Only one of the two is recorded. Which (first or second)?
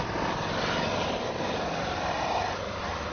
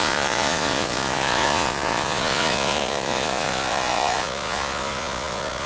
first